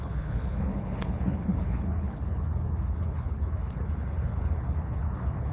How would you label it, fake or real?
fake